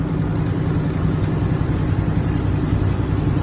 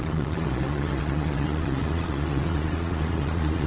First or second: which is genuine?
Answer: first